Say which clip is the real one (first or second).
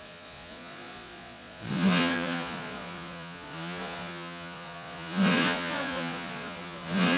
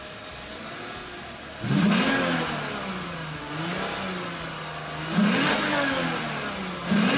second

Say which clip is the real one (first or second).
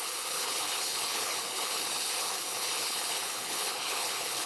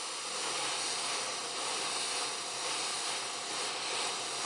second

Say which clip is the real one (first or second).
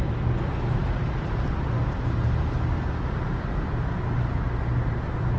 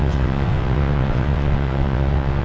first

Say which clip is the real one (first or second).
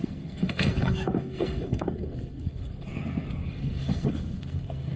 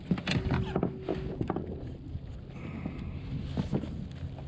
second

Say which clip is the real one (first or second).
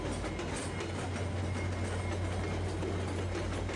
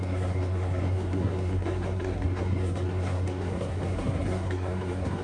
first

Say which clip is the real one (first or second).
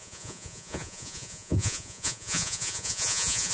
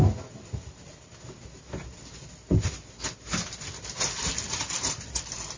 second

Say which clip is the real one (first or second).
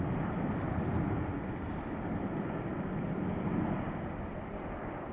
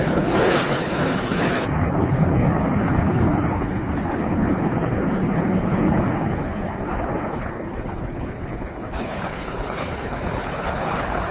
first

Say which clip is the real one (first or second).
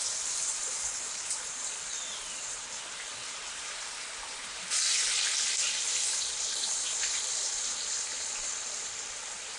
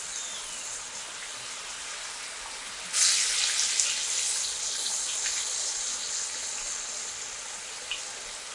second